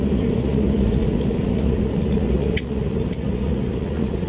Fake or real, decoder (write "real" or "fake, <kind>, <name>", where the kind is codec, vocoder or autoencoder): fake, vocoder, Vocos